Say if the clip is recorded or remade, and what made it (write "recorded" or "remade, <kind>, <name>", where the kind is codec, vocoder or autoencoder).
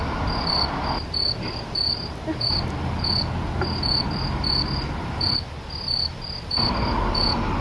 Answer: recorded